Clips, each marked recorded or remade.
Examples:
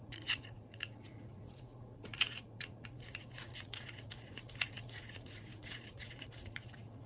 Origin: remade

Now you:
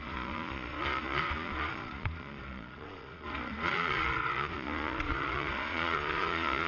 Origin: remade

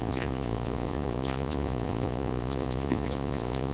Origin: remade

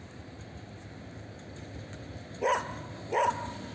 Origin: recorded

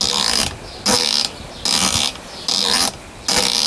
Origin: recorded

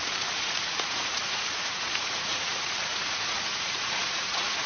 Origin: remade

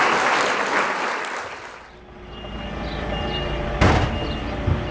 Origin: recorded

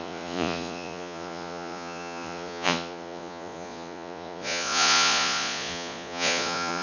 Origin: remade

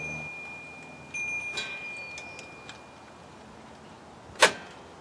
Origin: recorded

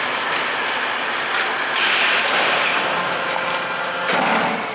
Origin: recorded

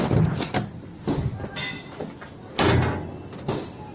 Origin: recorded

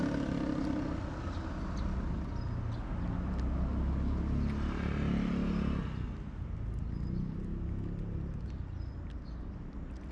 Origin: recorded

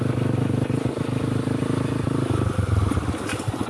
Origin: recorded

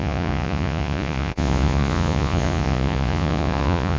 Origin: remade